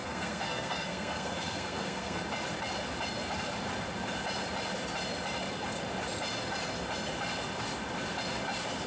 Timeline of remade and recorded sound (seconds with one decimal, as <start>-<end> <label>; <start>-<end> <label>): 0.0-2.2 remade; 2.2-8.9 recorded